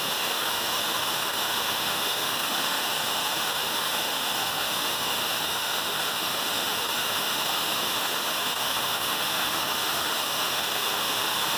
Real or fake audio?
fake